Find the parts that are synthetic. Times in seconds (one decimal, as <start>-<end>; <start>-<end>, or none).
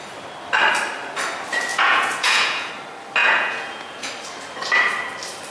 1.7-2.7; 3.2-4.1